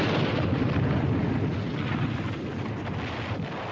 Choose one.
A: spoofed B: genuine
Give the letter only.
B